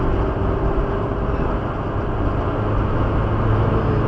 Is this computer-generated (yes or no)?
no